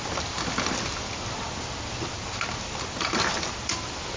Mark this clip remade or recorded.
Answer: recorded